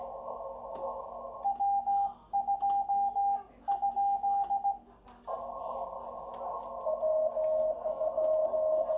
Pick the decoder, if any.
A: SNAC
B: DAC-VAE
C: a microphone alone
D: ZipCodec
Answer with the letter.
C